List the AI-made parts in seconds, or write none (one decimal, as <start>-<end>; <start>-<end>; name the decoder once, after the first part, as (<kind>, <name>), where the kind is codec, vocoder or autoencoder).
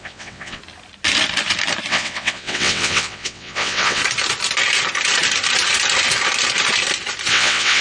0.0-0.6 (vocoder, WaveNeXt); 1.9-4.0; 7.3-7.8